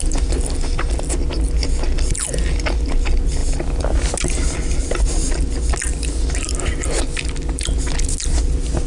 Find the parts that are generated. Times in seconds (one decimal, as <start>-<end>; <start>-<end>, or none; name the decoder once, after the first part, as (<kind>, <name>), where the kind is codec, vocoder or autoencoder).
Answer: none